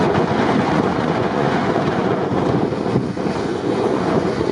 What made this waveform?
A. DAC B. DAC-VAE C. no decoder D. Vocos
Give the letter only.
D